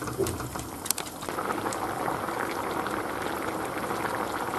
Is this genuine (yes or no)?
yes